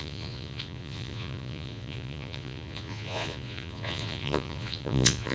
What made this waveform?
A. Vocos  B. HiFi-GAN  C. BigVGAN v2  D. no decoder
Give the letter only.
A